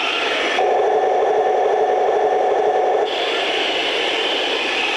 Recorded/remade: remade